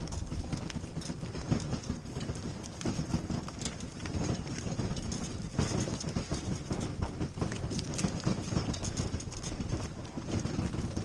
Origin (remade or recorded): recorded